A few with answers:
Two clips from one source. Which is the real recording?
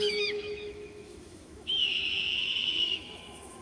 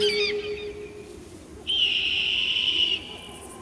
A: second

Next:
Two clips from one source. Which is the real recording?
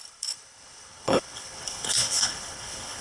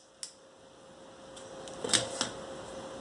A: second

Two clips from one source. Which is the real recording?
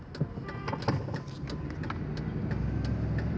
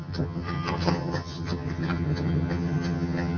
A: first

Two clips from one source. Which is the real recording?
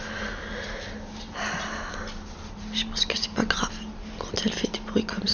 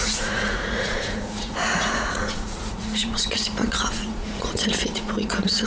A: first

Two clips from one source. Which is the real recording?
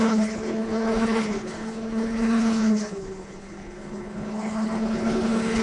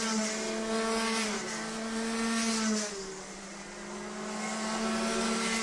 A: second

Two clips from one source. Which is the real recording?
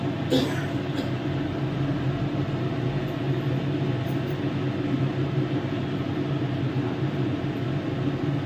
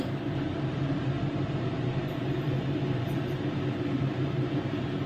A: first